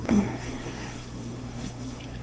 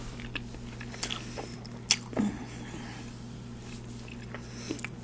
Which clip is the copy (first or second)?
first